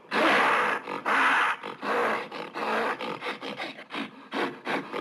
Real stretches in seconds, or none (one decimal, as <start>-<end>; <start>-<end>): 0.0-5.0